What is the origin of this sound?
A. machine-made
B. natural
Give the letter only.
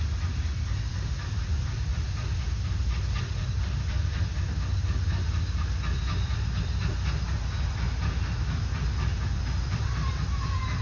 B